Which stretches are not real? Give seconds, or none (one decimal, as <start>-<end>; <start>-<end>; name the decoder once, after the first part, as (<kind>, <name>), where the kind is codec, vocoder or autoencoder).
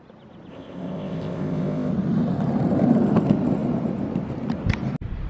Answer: 0.5-1.9 (codec, ZipCodec)